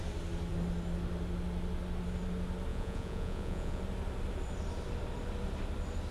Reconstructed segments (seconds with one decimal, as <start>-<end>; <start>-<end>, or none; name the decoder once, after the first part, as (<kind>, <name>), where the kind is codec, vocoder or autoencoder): 2.7-3.8 (vocoder, Vocos)